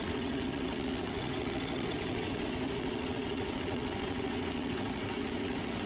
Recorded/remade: remade